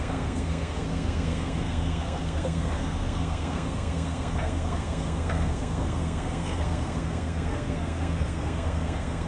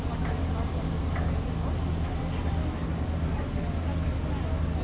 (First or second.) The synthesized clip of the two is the first